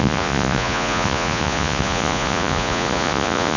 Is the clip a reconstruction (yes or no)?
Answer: yes